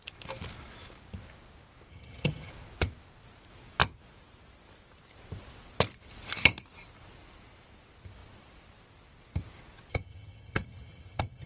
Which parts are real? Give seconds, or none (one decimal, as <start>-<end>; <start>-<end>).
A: 0.0-1.9; 2.5-9.9